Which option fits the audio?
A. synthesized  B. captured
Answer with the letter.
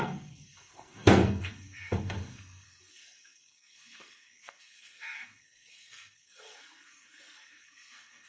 A